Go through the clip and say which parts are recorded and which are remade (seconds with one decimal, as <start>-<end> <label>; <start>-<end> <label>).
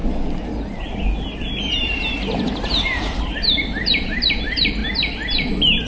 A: 0.0-1.7 recorded; 1.7-4.8 remade; 4.8-5.9 recorded